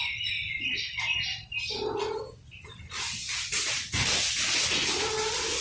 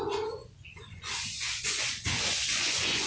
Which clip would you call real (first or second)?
first